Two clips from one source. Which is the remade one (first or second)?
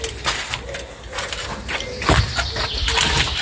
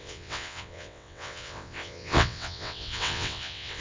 second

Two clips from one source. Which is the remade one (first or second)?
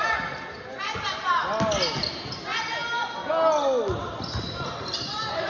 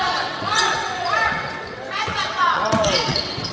second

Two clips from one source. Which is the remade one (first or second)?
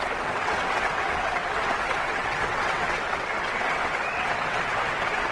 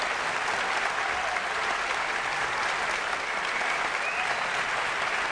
first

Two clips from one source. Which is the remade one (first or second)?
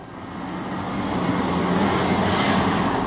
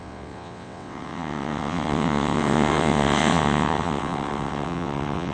second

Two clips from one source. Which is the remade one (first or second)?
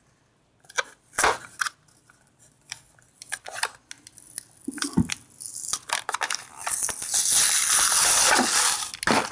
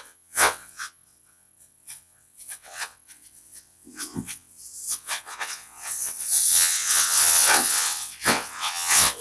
second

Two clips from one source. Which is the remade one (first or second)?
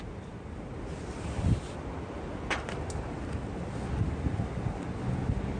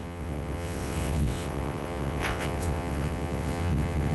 second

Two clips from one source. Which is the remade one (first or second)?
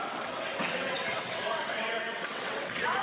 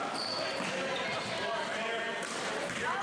first